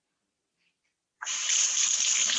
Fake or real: real